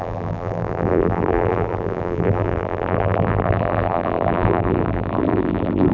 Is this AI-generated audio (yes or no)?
yes